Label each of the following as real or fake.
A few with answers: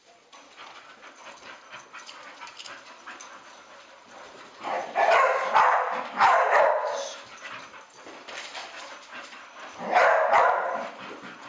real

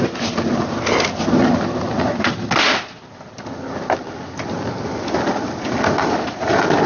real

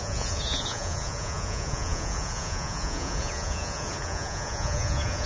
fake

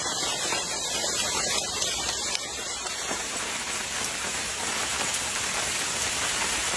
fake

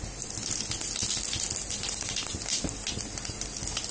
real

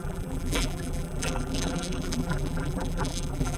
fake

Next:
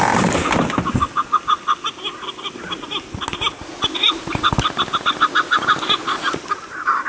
real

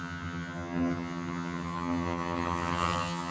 fake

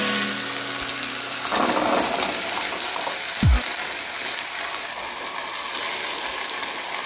real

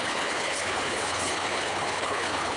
fake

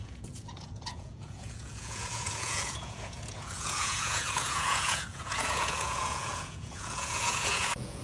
fake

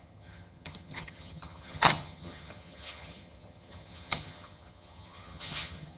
fake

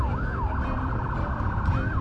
real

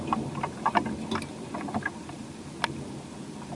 real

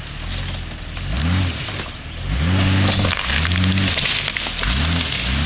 real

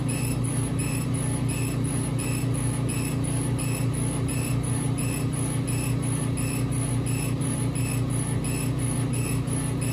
real